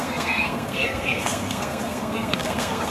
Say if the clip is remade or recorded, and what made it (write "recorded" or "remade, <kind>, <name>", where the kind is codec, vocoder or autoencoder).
remade, codec, SNAC